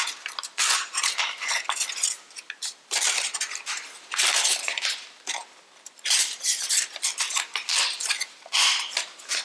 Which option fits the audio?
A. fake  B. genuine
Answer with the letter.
B